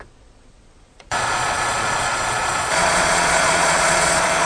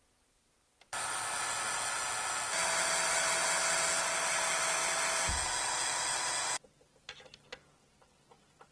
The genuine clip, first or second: second